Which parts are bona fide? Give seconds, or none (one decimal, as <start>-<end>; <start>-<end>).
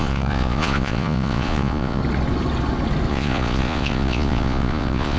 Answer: 2.0-3.1